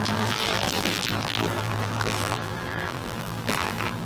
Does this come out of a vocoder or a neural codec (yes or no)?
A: yes